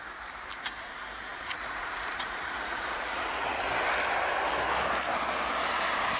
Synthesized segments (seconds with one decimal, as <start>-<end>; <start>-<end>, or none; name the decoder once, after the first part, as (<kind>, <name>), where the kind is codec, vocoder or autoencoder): 1.3-3.6 (vocoder, Vocos)